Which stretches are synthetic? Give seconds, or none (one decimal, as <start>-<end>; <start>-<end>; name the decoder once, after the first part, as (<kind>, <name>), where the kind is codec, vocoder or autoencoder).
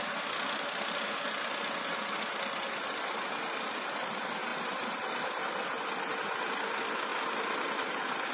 4.5-6.1 (vocoder, BigVGAN v2)